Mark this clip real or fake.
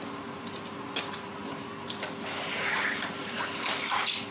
real